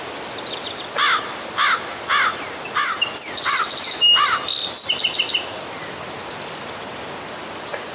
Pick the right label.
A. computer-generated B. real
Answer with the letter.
B